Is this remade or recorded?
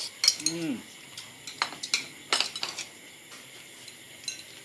recorded